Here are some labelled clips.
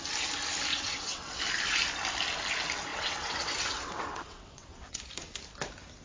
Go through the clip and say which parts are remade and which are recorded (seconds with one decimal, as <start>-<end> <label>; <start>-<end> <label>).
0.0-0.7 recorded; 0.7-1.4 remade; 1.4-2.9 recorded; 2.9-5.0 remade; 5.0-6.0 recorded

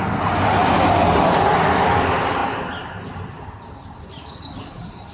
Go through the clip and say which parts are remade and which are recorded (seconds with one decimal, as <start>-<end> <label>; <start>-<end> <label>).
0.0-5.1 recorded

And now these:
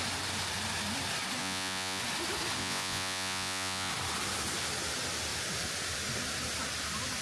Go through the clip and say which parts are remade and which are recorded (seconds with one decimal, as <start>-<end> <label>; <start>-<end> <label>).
0.0-1.4 recorded; 1.4-2.0 remade; 2.0-2.6 recorded; 2.6-3.9 remade; 3.9-7.2 recorded